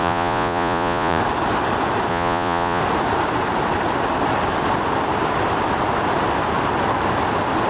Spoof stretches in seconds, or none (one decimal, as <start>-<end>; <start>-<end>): 0.0-1.2; 2.1-2.8